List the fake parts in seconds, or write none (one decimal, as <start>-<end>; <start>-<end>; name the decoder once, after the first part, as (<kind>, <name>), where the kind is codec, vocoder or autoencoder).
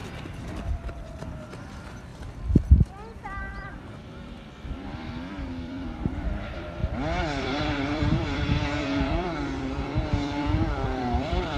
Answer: 0.0-2.1 (vocoder, BigVGAN v2); 3.4-6.8; 7.4-11.6